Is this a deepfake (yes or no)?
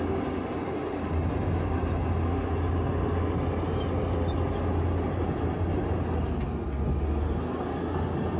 no